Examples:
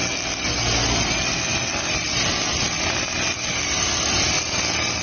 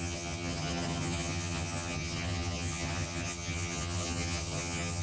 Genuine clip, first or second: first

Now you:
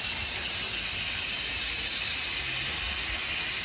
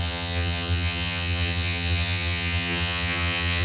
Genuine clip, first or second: first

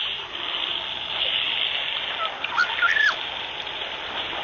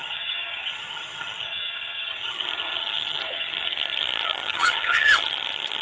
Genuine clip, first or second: first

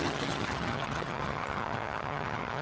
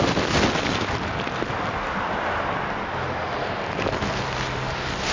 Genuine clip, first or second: second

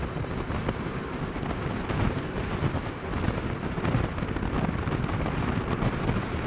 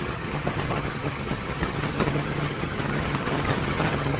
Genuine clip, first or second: first